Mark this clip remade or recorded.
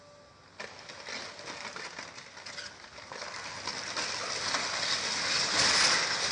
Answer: recorded